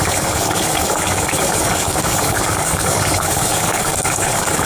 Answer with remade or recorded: remade